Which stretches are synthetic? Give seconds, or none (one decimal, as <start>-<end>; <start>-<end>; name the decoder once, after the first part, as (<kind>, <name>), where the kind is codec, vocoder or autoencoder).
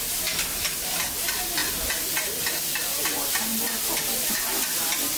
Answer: none